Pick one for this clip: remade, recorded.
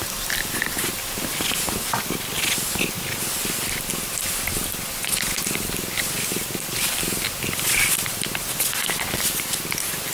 recorded